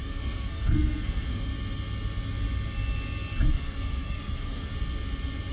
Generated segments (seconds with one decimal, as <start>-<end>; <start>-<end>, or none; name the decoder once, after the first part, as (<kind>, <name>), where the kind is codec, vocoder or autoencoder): 0.0-1.5 (codec, SNAC); 3.5-4.7